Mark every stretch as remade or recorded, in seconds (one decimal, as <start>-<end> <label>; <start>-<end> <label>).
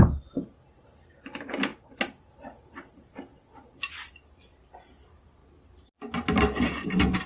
0.0-7.3 recorded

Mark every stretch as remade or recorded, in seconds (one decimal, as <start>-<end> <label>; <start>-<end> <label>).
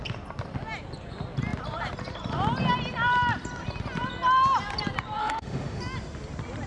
0.0-5.2 recorded; 5.2-5.8 remade; 5.8-6.7 recorded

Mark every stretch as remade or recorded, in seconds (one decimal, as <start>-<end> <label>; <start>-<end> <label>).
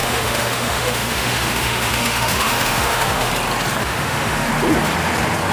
0.0-3.3 remade; 3.3-3.8 recorded; 3.8-4.5 remade; 4.5-5.5 recorded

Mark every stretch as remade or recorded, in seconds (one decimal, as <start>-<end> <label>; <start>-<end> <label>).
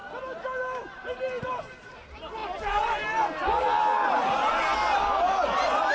0.0-5.9 recorded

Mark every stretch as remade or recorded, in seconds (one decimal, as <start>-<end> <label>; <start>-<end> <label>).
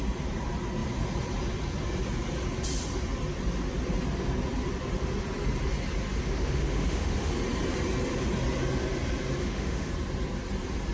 0.0-6.2 recorded; 6.2-7.3 remade; 7.3-9.4 recorded; 9.4-9.9 remade; 9.9-10.9 recorded